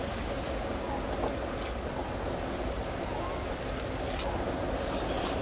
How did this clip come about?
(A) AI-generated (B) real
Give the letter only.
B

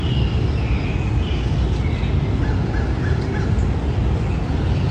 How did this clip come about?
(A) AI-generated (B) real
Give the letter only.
B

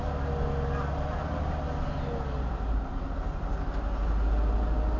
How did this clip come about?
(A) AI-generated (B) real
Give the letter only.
B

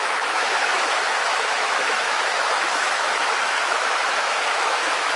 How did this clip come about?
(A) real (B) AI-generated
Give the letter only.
B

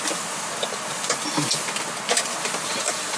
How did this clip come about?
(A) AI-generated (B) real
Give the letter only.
B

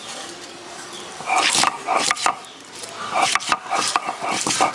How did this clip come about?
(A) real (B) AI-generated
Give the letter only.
A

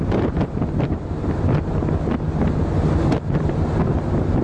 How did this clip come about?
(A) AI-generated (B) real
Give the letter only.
B